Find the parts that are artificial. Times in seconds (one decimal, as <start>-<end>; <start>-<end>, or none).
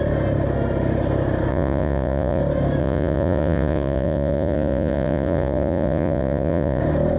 1.5-2.4; 2.8-6.8